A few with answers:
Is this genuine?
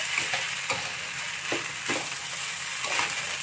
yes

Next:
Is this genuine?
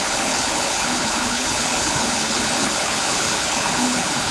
no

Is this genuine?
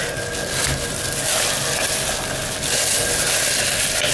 yes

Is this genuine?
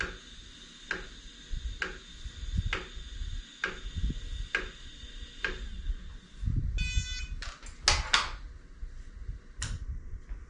yes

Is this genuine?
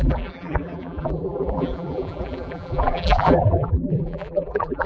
no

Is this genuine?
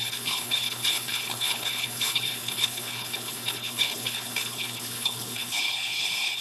no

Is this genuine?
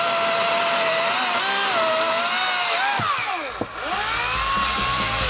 yes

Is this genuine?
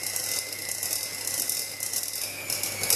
yes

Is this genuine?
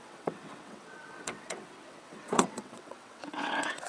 no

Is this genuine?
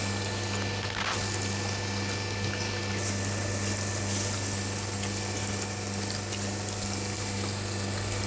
yes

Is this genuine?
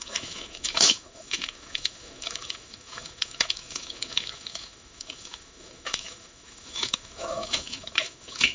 no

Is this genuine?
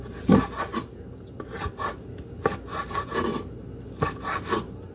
yes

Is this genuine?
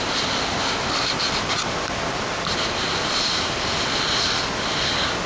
yes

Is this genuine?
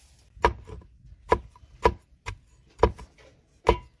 yes